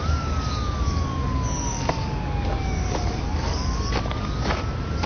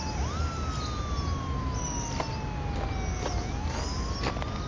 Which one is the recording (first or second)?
second